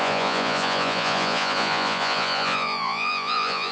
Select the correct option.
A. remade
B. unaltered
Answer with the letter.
A